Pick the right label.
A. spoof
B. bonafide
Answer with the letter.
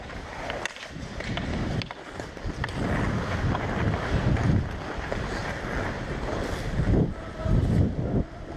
B